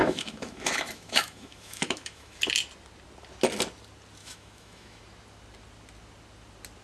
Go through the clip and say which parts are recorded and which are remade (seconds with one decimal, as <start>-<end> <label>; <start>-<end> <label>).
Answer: 0.0-2.4 remade; 2.4-4.2 recorded; 4.2-5.0 remade; 5.0-6.8 recorded